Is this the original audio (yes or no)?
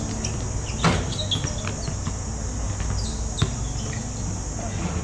yes